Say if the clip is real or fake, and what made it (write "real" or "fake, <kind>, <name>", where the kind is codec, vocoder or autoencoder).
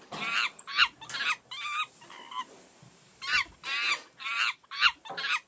real